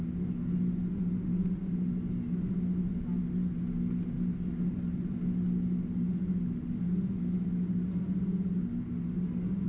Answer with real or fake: real